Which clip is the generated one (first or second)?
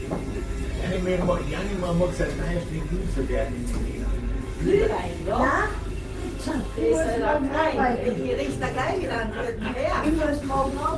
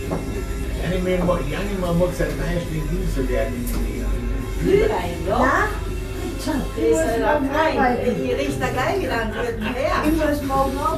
first